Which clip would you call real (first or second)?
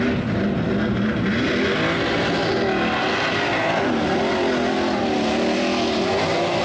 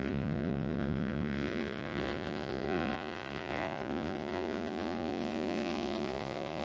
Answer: first